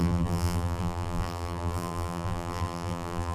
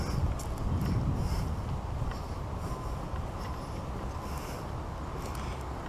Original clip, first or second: second